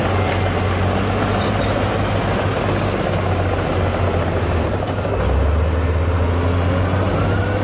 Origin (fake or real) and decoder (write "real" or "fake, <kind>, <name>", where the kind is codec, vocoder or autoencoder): real